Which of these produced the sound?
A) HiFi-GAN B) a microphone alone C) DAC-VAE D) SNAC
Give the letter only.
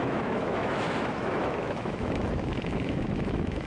C